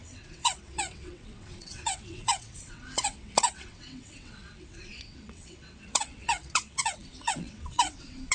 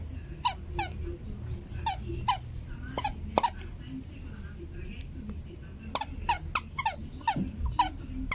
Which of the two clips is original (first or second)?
second